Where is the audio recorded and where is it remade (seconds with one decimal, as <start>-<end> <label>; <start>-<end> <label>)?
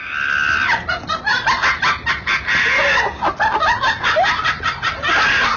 0.0-5.6 recorded